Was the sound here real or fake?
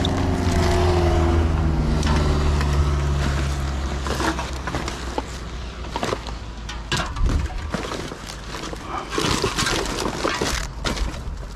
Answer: real